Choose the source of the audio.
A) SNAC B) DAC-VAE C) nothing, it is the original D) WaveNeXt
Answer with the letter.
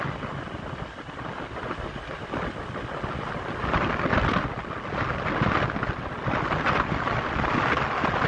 C